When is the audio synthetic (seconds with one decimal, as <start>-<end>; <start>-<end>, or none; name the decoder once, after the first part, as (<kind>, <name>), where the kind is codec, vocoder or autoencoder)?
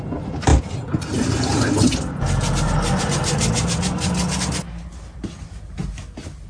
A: none